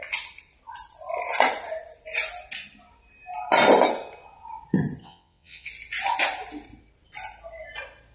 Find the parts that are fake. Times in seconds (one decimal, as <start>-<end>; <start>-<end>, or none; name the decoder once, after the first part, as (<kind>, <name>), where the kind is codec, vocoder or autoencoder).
5.0-5.7 (vocoder, WaveNeXt)